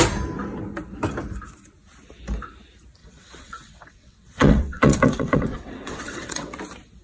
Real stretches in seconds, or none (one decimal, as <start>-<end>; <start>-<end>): 0.0-3.0; 6.5-7.0